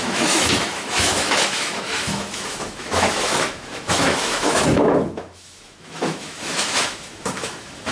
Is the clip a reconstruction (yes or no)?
yes